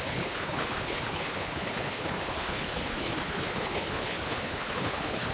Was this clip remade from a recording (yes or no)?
yes